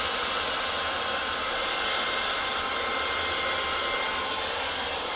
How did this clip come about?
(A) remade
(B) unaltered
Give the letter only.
B